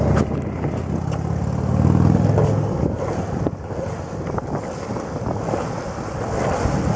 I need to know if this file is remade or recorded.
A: recorded